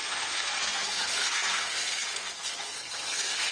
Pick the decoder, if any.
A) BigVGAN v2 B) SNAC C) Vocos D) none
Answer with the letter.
B